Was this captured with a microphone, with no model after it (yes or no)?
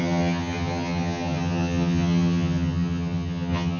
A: no